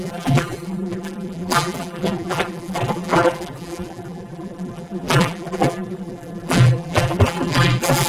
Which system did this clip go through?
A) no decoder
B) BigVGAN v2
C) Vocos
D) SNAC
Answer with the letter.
B